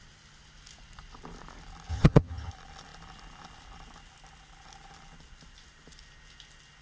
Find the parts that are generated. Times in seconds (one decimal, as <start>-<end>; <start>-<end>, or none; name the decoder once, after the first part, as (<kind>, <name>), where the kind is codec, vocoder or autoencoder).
1.9-2.5 (vocoder, HiFi-GAN)